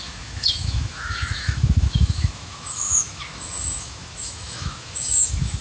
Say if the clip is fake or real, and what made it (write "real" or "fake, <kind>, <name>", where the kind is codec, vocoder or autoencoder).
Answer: fake, autoencoder, DAC-VAE